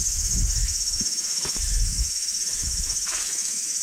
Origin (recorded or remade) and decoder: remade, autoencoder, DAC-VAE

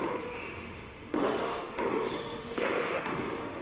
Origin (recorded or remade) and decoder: remade, autoencoder, DAC-VAE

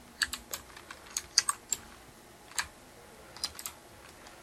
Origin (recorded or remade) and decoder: recorded